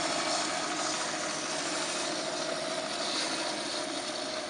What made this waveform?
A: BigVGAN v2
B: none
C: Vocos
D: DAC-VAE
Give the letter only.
B